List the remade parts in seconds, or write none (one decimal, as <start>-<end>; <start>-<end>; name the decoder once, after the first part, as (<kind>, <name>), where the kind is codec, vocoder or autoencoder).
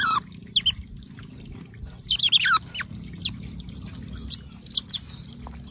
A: none